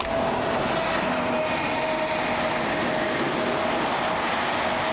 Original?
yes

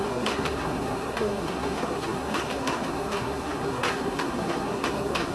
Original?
no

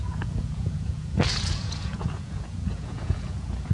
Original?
no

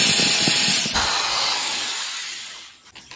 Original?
yes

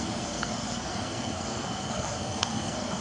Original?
no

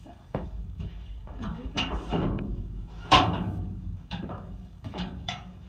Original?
no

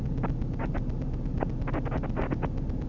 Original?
yes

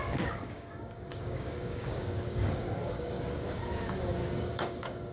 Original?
no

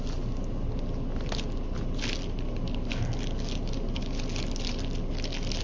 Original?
yes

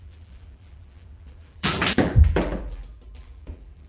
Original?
no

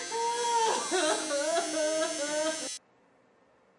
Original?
yes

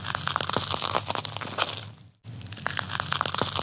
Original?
yes